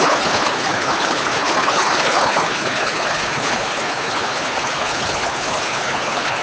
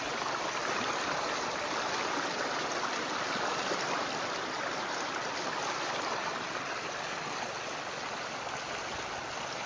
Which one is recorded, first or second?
second